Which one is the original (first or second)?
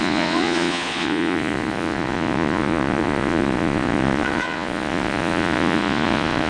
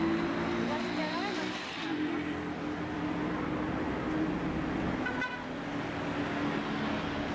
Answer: second